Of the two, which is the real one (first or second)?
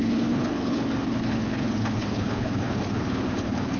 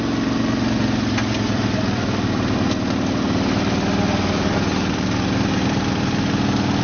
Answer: second